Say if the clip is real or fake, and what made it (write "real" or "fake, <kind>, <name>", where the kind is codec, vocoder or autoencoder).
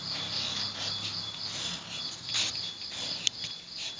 real